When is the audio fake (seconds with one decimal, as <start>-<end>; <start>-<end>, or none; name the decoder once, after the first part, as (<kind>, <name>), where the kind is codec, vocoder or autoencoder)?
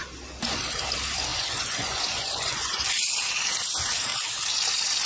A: 1.3-2.8 (vocoder, Vocos)